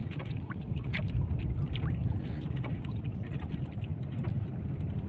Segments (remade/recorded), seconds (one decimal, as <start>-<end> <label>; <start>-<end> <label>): 0.0-1.0 remade; 1.0-2.0 recorded; 2.0-3.5 remade; 3.5-5.1 recorded